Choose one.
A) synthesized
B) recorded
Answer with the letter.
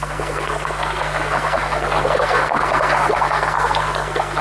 A